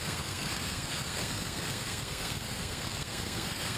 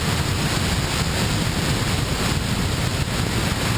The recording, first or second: second